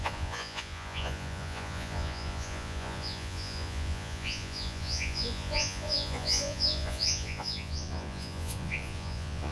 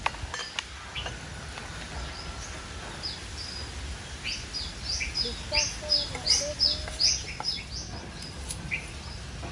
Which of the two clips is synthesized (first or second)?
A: first